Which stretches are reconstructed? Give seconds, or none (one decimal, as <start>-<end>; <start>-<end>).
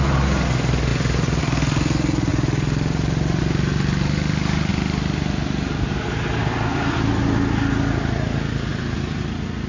8.7-9.2